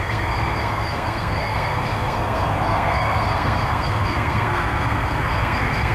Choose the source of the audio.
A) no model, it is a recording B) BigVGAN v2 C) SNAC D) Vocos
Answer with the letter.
C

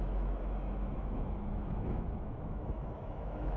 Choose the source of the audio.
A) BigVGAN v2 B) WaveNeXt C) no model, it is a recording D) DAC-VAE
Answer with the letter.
D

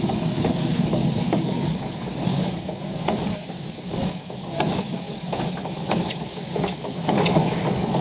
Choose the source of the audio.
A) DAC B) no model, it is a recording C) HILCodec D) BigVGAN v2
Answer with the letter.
A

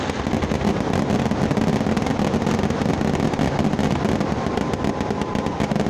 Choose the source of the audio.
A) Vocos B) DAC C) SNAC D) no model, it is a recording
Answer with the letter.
D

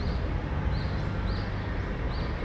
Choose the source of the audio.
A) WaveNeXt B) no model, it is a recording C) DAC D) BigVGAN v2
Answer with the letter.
B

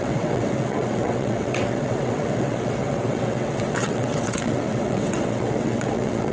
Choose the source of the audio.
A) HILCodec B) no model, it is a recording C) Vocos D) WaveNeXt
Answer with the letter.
D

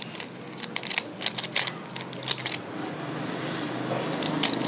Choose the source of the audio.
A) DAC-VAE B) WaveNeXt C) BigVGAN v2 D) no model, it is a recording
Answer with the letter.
D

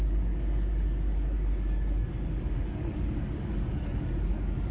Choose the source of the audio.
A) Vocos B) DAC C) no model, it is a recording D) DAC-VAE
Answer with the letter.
B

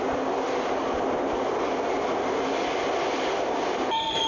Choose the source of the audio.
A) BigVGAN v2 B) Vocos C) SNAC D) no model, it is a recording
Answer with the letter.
D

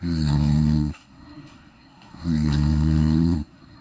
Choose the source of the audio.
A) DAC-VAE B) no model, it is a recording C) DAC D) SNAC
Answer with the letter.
D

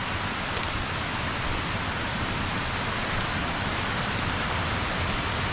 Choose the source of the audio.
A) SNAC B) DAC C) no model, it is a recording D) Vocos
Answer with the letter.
C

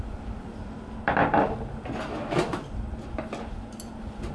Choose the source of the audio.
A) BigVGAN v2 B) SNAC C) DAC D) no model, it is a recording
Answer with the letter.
D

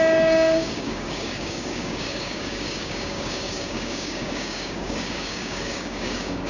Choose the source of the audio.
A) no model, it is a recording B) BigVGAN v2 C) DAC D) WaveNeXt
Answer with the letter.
C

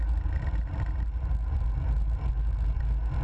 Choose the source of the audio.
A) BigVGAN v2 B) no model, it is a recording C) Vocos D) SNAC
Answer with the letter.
B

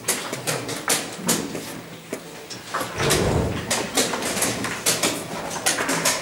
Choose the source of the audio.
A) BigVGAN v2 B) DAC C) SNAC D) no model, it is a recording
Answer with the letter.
D